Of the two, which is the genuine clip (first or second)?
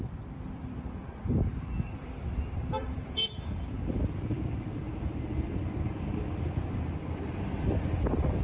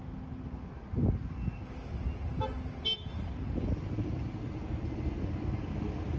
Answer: second